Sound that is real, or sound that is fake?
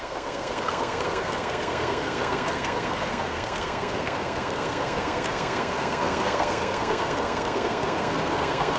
fake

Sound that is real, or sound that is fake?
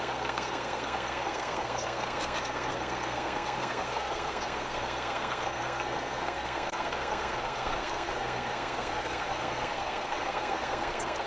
fake